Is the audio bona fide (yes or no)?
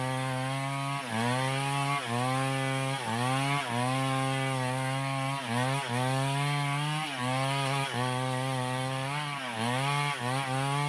yes